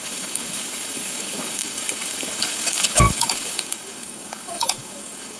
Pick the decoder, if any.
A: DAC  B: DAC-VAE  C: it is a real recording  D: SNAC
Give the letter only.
A